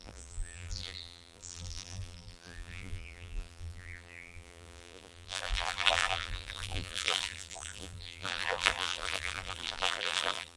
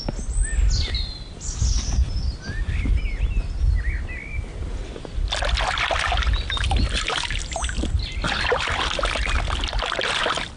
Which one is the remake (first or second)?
first